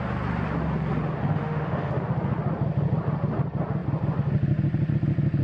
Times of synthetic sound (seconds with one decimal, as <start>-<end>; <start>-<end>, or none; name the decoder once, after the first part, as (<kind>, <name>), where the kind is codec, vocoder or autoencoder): 1.3-1.9 (autoencoder, DAC-VAE)